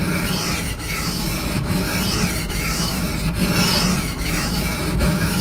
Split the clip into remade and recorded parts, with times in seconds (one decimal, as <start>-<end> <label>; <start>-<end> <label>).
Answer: 0.0-0.7 recorded; 0.7-1.9 remade; 1.9-2.5 recorded; 2.5-3.1 remade; 3.1-4.0 recorded; 4.0-5.4 remade